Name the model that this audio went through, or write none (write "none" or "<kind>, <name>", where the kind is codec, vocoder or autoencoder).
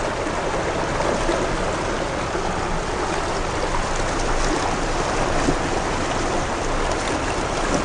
none